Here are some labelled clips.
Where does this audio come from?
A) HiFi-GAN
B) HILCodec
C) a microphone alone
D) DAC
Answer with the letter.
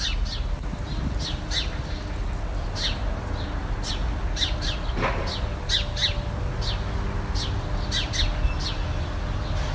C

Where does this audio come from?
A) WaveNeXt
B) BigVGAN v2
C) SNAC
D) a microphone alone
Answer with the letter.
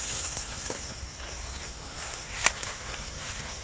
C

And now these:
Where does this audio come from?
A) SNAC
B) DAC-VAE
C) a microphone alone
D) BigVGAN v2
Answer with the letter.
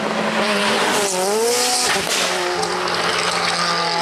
C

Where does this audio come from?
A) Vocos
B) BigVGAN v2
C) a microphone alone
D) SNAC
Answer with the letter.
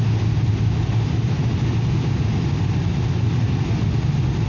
C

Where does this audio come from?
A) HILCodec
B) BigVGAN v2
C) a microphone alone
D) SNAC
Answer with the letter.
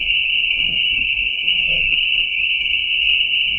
D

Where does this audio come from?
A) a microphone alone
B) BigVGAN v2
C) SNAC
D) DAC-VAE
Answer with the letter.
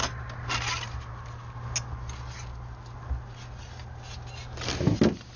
A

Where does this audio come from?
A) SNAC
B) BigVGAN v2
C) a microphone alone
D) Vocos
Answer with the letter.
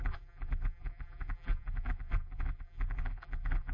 B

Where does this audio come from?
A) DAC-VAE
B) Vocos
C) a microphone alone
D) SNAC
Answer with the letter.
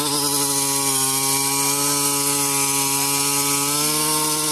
C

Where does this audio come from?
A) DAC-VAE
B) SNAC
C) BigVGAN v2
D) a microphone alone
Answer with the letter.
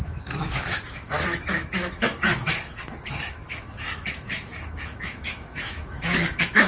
A